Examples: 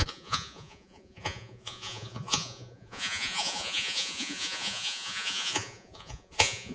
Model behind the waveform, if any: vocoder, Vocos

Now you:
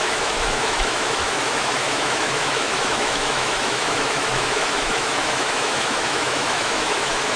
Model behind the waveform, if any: autoencoder, DAC-VAE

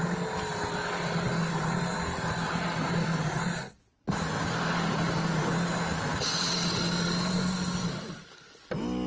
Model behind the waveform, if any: none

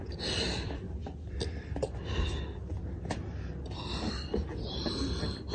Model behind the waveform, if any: none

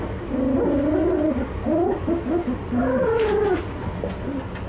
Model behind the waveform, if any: none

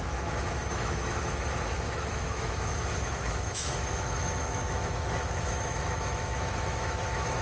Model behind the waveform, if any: autoencoder, DAC-VAE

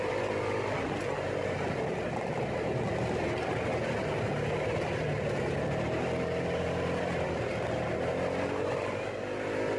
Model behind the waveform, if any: none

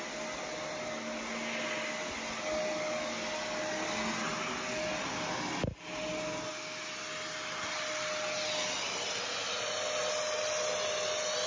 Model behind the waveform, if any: none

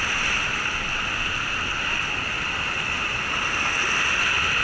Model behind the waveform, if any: none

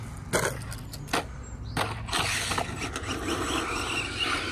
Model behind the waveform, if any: none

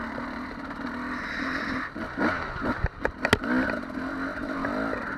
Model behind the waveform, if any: none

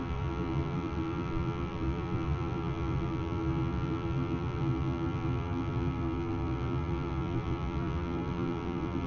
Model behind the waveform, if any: vocoder, BigVGAN v2